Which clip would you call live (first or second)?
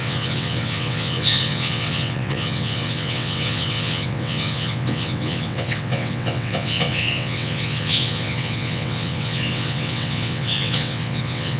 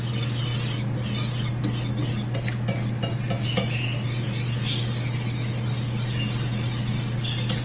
second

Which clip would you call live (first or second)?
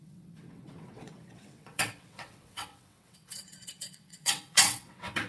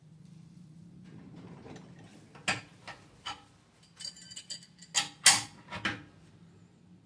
second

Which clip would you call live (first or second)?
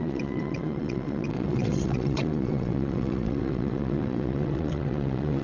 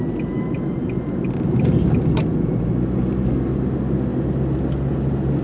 second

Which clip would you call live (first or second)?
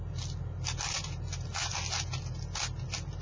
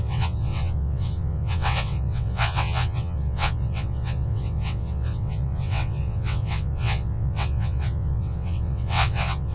first